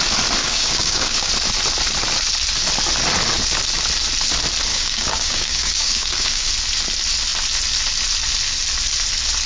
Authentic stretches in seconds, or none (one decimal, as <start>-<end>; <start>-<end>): 0.0-0.4; 1.3-4.7; 6.5-9.5